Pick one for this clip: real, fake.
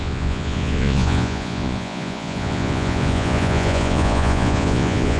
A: fake